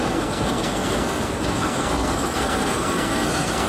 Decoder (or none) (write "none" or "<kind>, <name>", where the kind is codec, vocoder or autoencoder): codec, SNAC